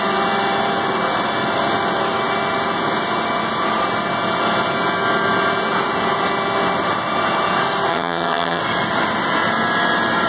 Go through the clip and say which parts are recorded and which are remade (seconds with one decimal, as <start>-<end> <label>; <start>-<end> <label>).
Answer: 0.0-7.9 recorded; 7.9-8.6 remade; 8.6-10.3 recorded